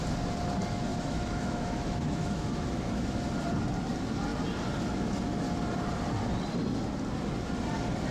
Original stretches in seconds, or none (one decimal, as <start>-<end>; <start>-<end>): 0.0-0.9; 3.2-8.1